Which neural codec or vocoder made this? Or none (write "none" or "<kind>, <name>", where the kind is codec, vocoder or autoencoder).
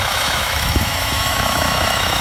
autoencoder, DAC-VAE